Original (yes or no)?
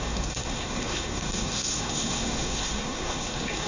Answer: no